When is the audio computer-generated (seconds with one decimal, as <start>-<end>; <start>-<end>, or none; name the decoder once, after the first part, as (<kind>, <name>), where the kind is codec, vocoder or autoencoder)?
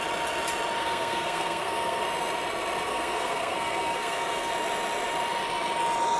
0.8-2.0 (codec, SNAC); 2.9-4.5